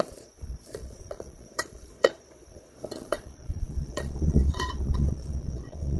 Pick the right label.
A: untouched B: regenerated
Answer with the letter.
B